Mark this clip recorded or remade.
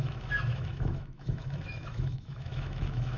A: remade